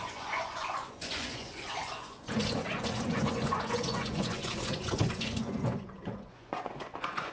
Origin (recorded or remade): remade